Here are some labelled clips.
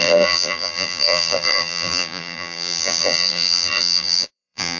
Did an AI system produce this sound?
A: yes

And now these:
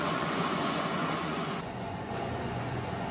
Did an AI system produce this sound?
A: yes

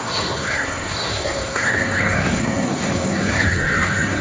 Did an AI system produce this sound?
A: yes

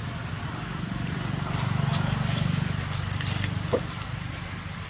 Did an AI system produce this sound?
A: no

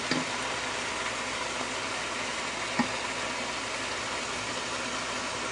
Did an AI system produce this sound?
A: no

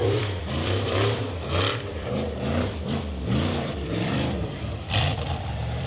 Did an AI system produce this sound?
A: yes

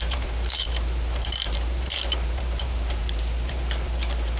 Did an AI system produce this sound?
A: yes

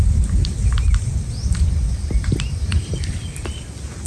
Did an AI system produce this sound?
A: no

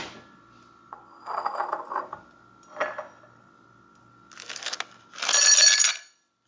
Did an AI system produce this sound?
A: no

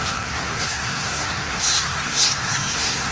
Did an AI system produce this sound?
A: yes